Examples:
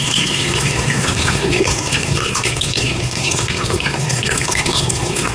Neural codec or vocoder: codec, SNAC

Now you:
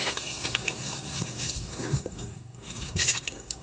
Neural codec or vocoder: codec, SNAC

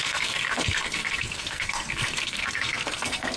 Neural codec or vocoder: codec, SNAC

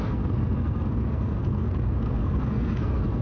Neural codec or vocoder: codec, SNAC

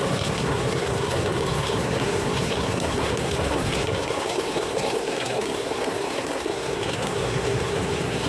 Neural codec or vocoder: codec, SNAC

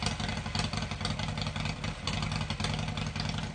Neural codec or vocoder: none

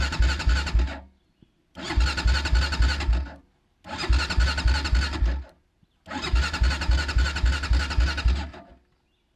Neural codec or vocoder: none